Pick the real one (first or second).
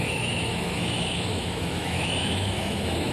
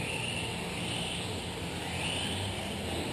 second